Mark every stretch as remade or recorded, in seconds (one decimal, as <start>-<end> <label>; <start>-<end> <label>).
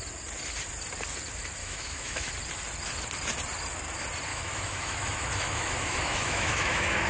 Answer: 0.0-1.6 recorded; 1.6-2.3 remade; 2.3-4.3 recorded; 4.3-7.1 remade